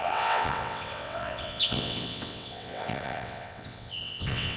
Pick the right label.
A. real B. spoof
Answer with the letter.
B